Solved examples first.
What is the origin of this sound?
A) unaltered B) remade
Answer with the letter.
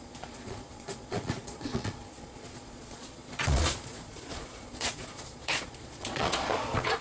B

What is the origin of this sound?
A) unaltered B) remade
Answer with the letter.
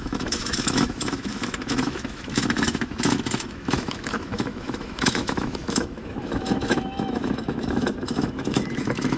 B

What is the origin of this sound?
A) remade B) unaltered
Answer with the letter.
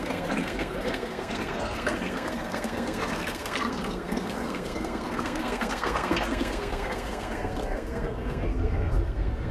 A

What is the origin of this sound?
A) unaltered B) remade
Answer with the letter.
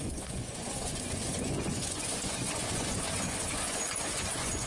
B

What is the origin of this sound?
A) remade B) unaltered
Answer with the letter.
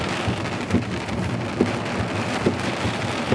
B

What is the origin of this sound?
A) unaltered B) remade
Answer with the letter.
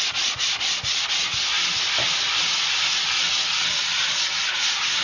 A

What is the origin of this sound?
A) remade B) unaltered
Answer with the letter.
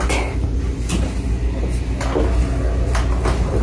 B